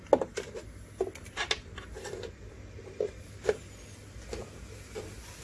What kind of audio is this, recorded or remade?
recorded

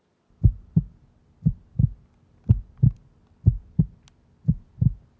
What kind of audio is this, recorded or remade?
recorded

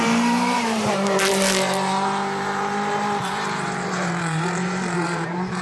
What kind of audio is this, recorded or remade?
remade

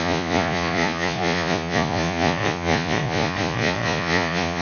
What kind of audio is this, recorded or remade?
remade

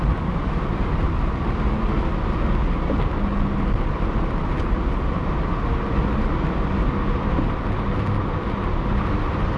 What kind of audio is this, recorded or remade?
recorded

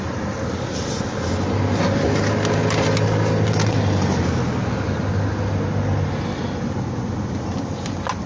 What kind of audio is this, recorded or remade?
recorded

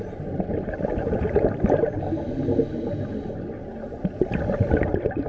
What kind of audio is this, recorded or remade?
recorded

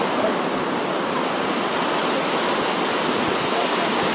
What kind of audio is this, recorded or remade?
recorded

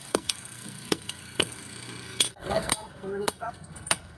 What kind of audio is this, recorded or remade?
remade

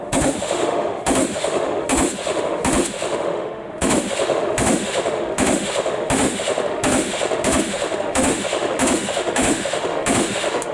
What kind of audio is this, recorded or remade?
remade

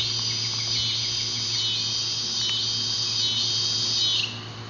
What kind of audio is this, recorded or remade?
recorded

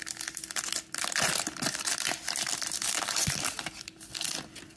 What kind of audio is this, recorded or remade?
recorded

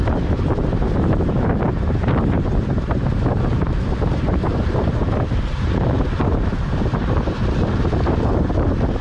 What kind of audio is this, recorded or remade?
remade